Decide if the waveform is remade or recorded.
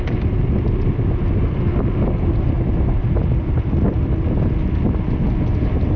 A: recorded